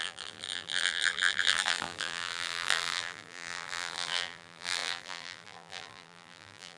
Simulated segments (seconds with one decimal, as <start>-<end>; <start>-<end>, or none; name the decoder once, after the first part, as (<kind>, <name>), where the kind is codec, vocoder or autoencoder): 0.0-6.8 (vocoder, BigVGAN v2)